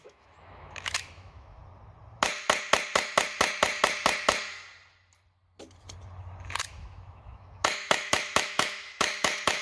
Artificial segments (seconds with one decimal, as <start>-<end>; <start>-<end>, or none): 0.0-1.6; 6.7-9.6